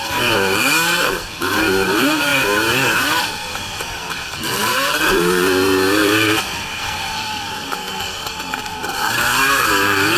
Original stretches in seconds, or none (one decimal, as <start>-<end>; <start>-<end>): none